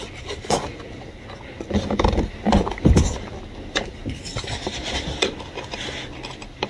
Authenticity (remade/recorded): recorded